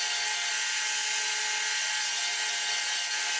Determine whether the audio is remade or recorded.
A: recorded